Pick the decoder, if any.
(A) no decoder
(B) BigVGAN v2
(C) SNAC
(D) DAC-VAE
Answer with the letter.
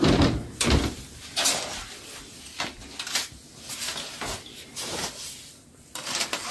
A